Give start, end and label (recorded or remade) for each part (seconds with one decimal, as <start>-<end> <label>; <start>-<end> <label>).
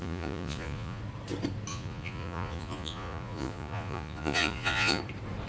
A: 0.0-1.0 remade; 1.0-1.7 recorded; 1.7-5.0 remade; 5.0-5.5 recorded